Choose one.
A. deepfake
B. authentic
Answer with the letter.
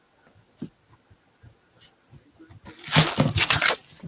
B